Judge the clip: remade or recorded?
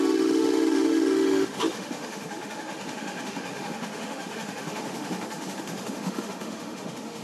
remade